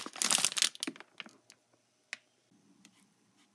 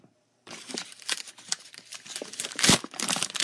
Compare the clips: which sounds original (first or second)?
first